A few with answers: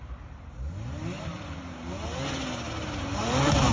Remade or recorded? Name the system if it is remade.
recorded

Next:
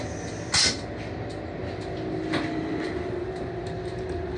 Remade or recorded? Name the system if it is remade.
recorded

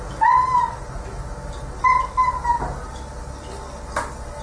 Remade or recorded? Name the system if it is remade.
recorded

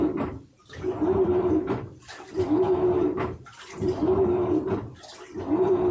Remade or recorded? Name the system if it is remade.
remade, vocoder, BigVGAN v2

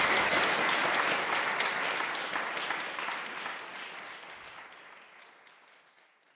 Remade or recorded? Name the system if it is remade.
recorded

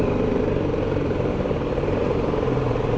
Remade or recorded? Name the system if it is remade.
remade, vocoder, BigVGAN v2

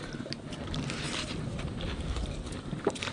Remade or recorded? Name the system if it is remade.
remade, vocoder, BigVGAN v2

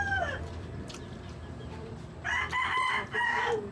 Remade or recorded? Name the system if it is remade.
remade, vocoder, BigVGAN v2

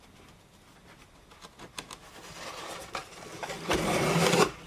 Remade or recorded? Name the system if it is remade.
recorded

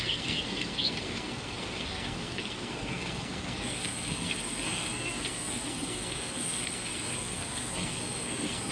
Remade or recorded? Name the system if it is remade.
remade, codec, SNAC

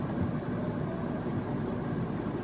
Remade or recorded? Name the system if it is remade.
recorded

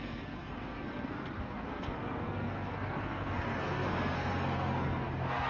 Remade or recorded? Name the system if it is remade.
remade, codec, SNAC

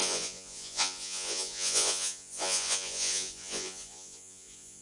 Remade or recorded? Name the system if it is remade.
remade, vocoder, Vocos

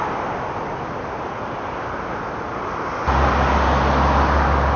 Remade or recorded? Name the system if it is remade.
recorded